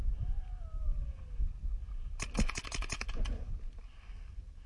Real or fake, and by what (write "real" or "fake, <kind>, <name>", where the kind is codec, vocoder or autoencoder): real